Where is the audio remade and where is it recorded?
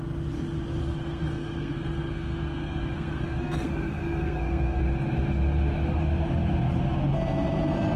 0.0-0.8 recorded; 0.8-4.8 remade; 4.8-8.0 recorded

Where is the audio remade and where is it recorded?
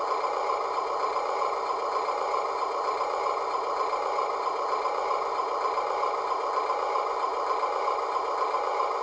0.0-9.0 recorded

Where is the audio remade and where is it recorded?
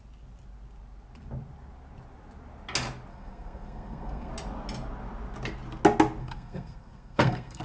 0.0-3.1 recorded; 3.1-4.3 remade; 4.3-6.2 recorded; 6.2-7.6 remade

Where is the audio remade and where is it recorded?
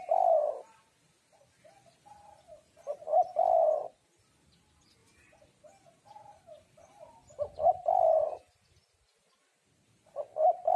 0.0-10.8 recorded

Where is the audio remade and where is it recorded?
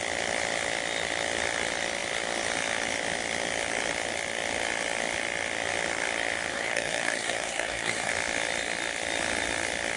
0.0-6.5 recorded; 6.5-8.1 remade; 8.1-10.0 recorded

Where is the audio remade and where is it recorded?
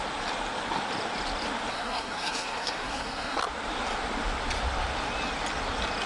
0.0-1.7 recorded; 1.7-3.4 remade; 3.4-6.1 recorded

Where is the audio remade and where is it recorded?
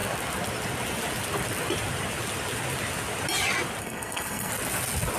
0.0-3.8 recorded; 3.8-4.5 remade; 4.5-5.2 recorded